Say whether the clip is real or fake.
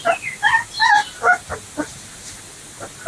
real